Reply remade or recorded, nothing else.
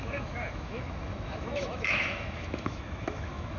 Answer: remade